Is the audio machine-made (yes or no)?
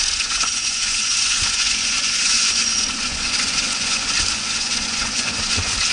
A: yes